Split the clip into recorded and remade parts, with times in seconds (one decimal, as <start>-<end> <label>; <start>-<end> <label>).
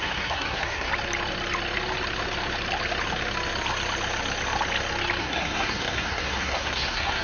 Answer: 0.0-0.9 remade; 0.9-5.2 recorded; 5.2-7.2 remade